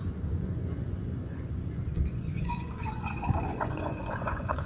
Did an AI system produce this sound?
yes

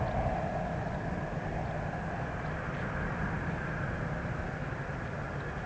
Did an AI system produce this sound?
no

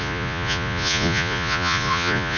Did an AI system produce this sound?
yes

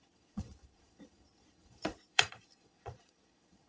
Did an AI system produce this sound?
yes